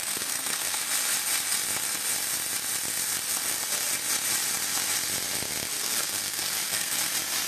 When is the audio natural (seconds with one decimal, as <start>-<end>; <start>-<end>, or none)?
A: 0.8-5.8; 7.1-7.5